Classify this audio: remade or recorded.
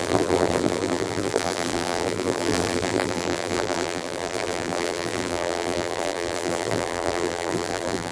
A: remade